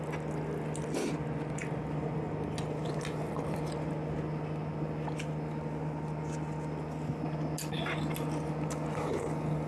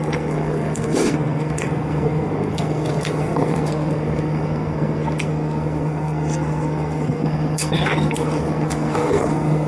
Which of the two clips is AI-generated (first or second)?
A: second